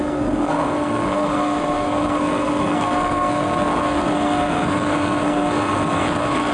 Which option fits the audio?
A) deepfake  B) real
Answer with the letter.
A